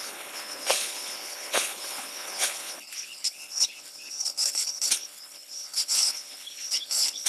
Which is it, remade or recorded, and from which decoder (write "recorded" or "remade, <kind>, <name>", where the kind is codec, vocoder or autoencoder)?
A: remade, codec, HILCodec